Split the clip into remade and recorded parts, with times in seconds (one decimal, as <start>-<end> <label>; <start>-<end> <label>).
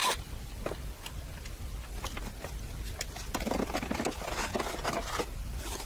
0.0-5.9 recorded